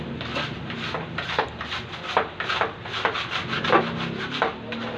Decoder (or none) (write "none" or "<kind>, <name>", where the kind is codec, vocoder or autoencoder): none